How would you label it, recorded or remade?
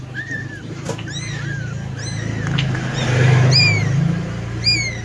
recorded